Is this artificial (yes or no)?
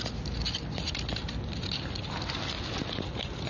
no